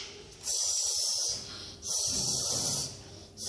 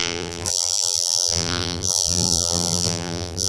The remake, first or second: second